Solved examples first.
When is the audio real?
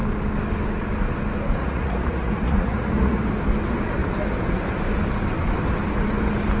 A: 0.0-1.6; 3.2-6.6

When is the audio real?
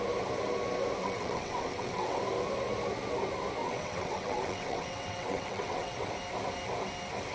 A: 0.0-1.0; 2.2-3.6; 6.1-7.3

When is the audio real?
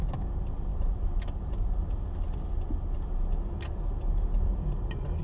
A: 0.0-5.2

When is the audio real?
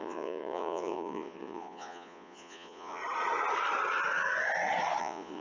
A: 3.0-5.0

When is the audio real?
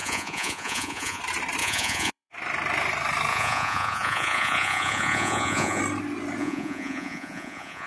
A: 1.2-1.6; 2.3-3.3; 5.8-6.4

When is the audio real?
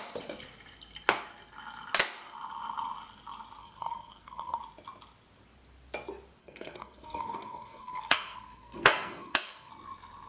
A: 0.0-3.6; 4.6-6.4; 9.7-10.3